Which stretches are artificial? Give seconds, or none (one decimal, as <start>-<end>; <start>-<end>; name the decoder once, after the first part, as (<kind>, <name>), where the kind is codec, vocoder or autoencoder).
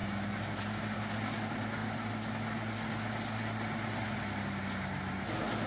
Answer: none